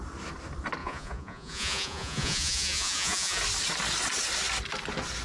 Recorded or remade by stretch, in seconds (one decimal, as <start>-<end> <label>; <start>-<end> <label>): 0.0-0.8 recorded; 0.8-3.4 remade; 3.4-5.2 recorded